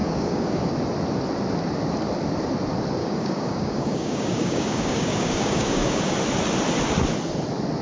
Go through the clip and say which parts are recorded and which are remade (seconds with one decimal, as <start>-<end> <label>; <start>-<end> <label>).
0.0-0.7 remade; 0.7-3.0 recorded; 3.0-6.1 remade; 6.1-7.8 recorded